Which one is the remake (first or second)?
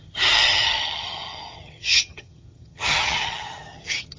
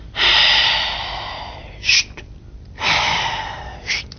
first